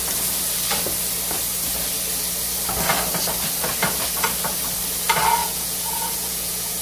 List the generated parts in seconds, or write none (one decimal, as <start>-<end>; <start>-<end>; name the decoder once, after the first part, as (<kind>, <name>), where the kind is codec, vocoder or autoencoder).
5.4-6.8 (vocoder, Vocos)